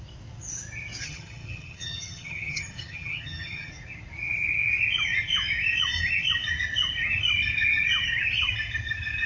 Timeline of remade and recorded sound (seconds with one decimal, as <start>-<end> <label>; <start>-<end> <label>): 0.0-1.0 recorded; 1.0-3.7 remade; 3.7-9.3 recorded